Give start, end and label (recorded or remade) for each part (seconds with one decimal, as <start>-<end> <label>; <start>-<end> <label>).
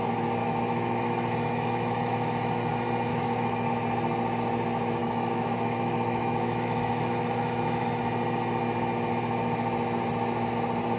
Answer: 0.0-0.4 recorded; 0.4-2.5 remade; 2.5-3.1 recorded; 3.1-3.7 remade; 3.7-5.0 recorded; 5.0-8.0 remade; 8.0-11.0 recorded